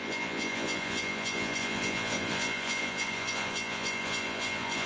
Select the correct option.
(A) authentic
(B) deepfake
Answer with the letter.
B